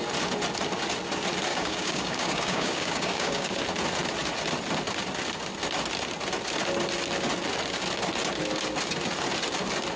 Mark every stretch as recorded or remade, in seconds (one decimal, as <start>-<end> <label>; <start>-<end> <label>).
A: 0.0-1.5 recorded; 1.5-3.6 remade; 3.6-10.0 recorded